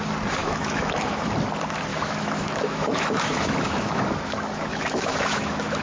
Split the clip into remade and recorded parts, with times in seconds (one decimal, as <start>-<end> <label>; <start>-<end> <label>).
0.0-0.4 recorded; 0.4-1.3 remade; 1.3-1.9 recorded; 1.9-5.8 remade